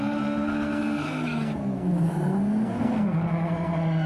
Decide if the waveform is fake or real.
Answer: fake